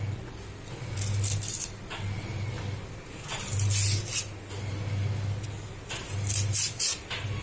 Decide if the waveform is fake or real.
real